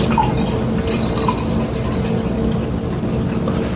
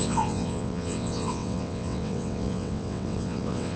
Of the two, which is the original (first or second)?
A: first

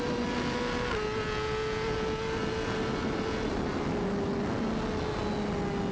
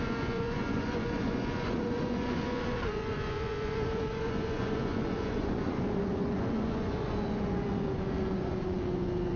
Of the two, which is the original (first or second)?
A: first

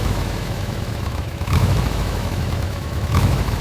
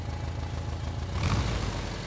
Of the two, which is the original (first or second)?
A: second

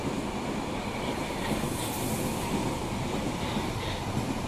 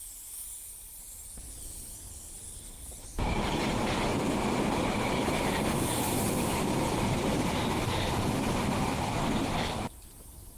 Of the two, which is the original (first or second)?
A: first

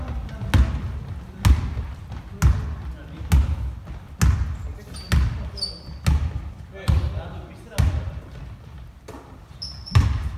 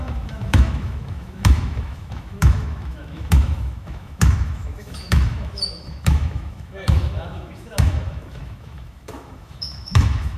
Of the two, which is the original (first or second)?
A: first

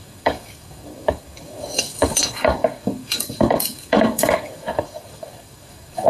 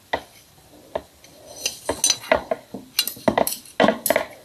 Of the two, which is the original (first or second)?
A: second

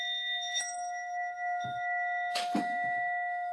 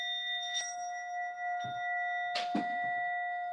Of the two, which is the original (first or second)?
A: second